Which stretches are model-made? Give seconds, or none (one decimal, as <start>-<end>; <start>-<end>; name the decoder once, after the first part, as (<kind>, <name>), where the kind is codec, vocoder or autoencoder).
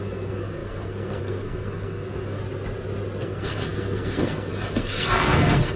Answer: 0.0-2.4 (codec, SNAC); 3.2-5.8